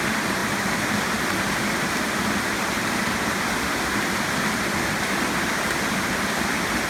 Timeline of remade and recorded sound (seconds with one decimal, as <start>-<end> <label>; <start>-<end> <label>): 0.0-6.9 recorded